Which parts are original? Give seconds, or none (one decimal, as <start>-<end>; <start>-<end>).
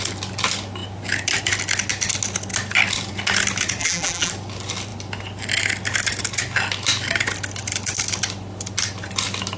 0.0-3.8; 4.3-9.6